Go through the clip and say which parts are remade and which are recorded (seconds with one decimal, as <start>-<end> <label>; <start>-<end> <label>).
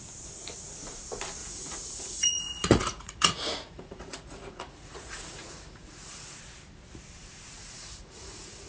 0.0-1.4 recorded; 1.4-6.4 remade; 6.4-7.2 recorded; 7.2-8.7 remade